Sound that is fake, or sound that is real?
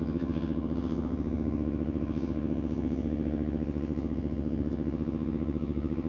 fake